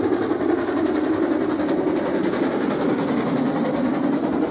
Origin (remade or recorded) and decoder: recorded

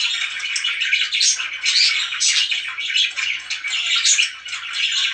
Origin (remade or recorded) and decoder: recorded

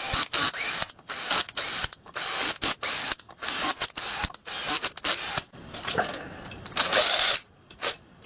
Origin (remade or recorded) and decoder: recorded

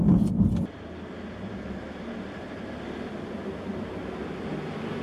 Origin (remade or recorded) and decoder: recorded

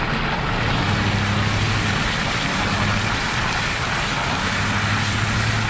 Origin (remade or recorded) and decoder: recorded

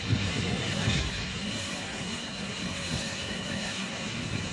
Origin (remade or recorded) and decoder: remade, codec, SNAC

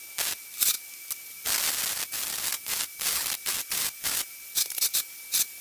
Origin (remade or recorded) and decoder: remade, vocoder, BigVGAN v2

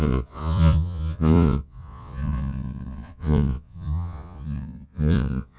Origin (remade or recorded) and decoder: remade, vocoder, Vocos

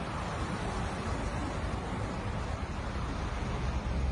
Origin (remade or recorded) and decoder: recorded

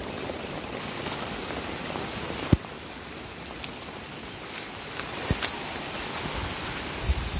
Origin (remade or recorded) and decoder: recorded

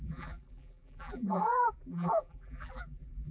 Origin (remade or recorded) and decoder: remade, vocoder, BigVGAN v2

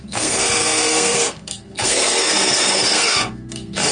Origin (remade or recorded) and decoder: remade, codec, SNAC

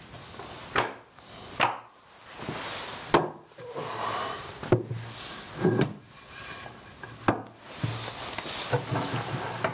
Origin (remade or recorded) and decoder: recorded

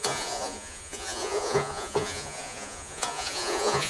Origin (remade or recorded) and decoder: remade, vocoder, Vocos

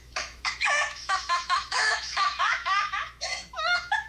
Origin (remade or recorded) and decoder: remade, autoencoder, DAC-VAE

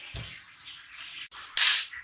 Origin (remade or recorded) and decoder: recorded